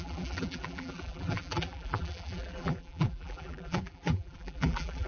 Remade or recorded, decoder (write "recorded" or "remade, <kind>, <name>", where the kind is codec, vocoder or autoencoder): remade, vocoder, BigVGAN v2